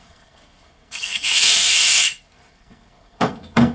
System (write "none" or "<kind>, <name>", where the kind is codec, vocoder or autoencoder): codec, SNAC